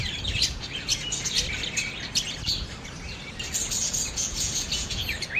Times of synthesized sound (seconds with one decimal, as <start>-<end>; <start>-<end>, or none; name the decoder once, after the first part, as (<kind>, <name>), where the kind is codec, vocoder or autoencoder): 0.5-0.9 (vocoder, Vocos); 4.1-5.4